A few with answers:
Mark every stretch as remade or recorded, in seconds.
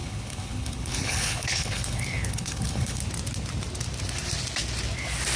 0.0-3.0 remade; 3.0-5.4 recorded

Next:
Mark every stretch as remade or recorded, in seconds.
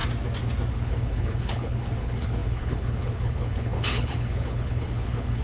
0.0-0.7 recorded; 0.7-5.4 remade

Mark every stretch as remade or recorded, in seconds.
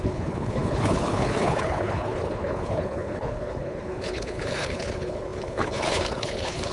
0.0-6.7 remade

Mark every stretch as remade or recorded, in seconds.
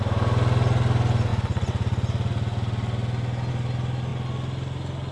0.0-5.1 recorded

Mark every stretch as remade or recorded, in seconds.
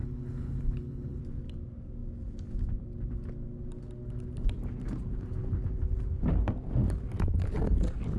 0.0-1.2 remade; 1.2-8.2 recorded